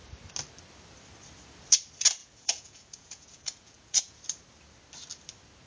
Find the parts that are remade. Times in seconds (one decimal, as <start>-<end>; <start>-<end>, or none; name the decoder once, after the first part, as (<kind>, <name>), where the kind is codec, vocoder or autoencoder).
2.2-4.2 (vocoder, Vocos)